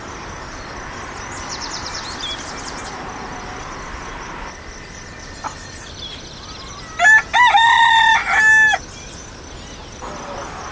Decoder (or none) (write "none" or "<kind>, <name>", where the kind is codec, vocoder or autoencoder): none